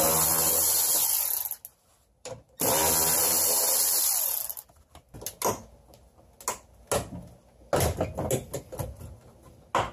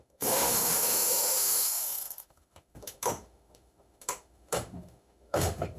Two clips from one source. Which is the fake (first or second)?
second